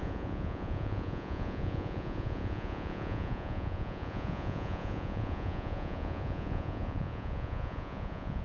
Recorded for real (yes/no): no